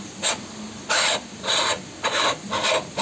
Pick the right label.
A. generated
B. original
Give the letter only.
B